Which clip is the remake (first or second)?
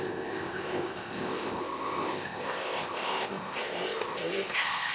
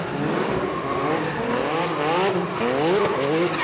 first